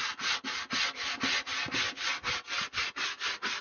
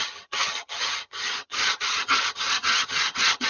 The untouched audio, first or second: first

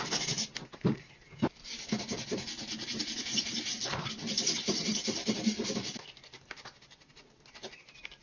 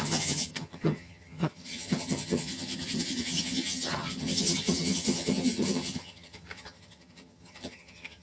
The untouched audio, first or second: first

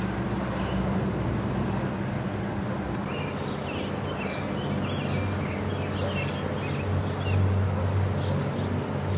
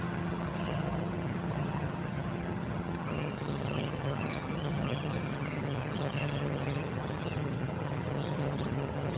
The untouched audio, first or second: first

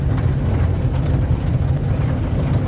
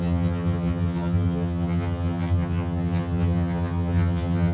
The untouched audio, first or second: first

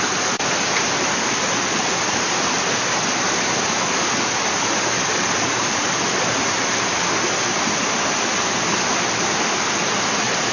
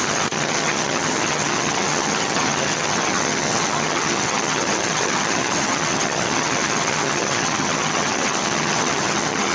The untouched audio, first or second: first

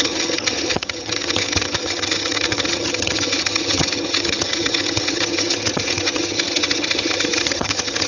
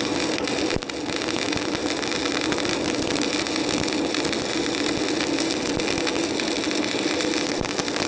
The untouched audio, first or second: second